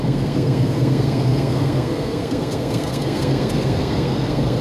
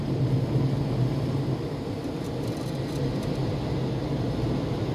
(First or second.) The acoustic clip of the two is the second